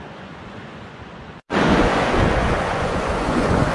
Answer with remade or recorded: remade